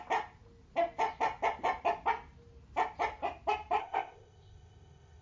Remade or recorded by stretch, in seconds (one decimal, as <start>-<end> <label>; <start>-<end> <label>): 0.0-3.8 recorded; 3.8-5.2 remade